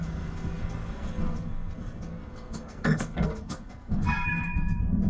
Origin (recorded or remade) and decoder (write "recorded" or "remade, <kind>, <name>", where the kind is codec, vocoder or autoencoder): remade, codec, SNAC